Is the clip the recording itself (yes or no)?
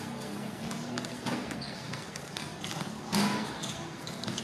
no